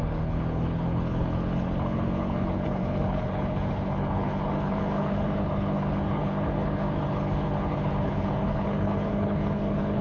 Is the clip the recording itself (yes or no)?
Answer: no